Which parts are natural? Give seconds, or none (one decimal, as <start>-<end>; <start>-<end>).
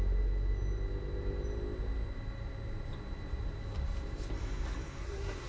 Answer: 0.0-5.0